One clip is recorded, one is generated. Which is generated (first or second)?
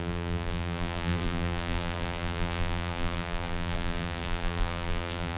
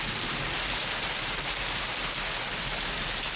first